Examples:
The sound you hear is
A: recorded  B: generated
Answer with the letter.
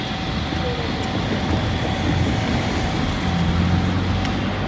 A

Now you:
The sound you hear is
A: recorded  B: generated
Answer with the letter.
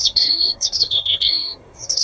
B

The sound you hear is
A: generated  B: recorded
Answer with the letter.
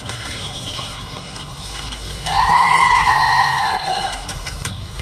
A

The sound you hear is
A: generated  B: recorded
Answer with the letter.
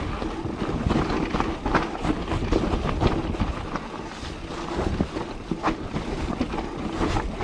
B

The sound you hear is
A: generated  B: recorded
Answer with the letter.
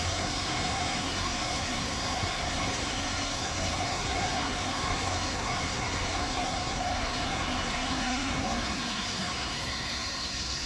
A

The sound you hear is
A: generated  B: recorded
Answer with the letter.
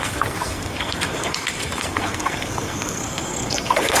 A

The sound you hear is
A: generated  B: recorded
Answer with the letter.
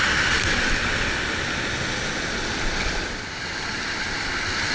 B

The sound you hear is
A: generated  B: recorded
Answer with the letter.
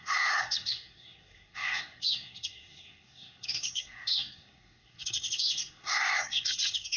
A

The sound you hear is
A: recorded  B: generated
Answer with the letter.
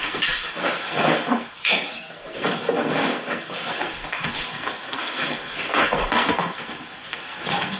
B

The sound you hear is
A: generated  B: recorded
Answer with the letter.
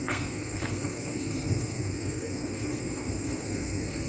A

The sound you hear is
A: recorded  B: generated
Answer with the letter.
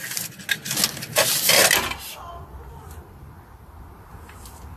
A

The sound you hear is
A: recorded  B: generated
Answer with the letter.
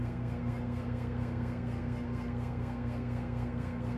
B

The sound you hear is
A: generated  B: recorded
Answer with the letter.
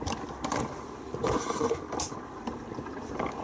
B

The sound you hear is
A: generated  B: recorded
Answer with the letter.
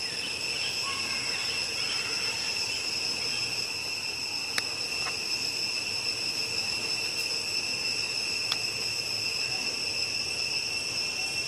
B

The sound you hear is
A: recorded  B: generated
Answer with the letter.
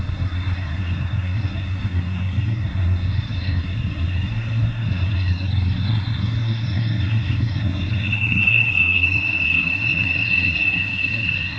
B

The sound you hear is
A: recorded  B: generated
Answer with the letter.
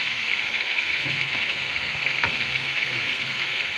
B